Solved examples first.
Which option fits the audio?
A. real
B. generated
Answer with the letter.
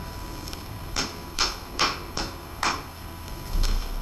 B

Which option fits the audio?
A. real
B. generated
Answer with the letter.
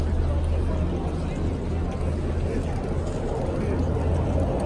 A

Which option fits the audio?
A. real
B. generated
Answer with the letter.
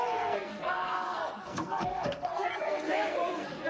B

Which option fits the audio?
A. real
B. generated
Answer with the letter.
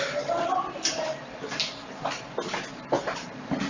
A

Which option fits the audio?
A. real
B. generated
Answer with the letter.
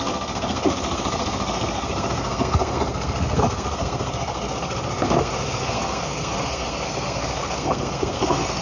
B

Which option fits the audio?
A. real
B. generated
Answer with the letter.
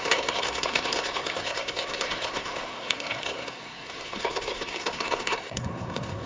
B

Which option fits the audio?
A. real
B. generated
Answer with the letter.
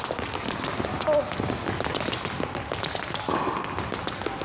A